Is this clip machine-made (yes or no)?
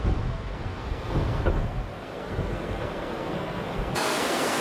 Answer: yes